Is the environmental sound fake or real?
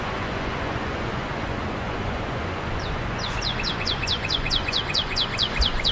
fake